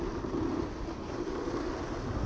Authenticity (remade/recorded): recorded